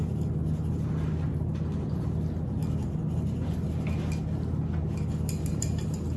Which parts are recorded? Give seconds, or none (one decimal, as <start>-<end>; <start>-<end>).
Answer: 0.0-6.2